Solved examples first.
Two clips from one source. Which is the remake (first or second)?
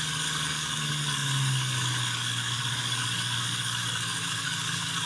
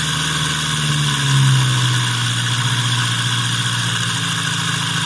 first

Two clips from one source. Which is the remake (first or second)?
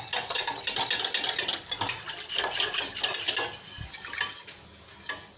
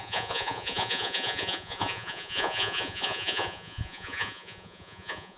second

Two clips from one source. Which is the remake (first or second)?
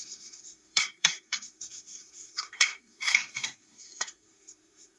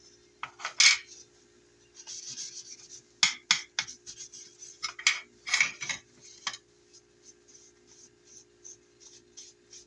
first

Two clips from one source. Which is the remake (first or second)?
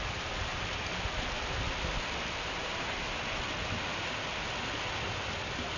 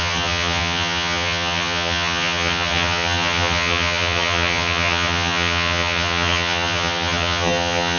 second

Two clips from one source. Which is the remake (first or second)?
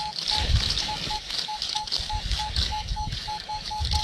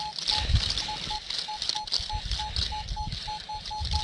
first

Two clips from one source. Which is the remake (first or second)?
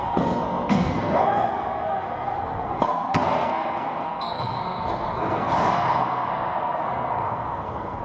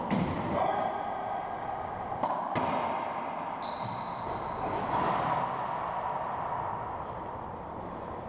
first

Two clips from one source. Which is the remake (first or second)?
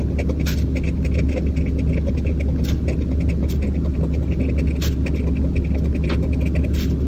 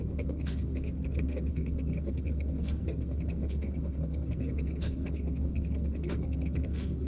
second